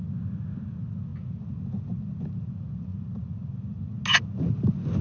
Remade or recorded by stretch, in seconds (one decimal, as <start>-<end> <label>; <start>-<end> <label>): 0.0-5.0 recorded

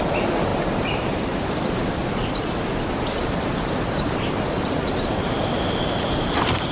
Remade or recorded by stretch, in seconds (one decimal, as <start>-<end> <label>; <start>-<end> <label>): 0.0-2.0 remade; 2.0-3.2 recorded; 3.2-6.7 remade

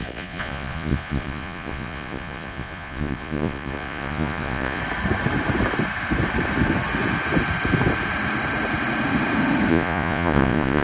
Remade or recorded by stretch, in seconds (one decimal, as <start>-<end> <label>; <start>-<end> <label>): 0.0-4.8 remade; 4.8-9.7 recorded; 9.7-10.8 remade

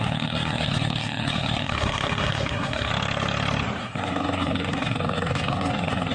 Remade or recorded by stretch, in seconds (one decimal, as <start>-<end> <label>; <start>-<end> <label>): 0.0-2.9 remade; 2.9-3.8 recorded; 3.8-6.1 remade

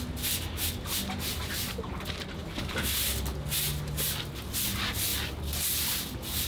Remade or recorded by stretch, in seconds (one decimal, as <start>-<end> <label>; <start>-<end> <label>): 0.0-6.5 recorded

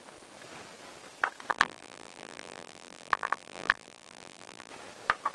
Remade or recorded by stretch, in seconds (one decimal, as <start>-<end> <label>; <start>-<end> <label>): 0.0-1.5 recorded; 1.5-4.7 remade; 4.7-5.3 recorded